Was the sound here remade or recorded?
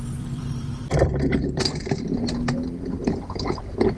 remade